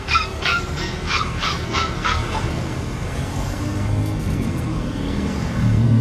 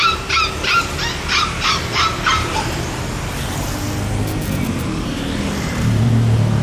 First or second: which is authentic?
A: second